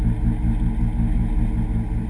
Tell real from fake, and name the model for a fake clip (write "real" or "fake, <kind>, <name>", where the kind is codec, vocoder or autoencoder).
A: real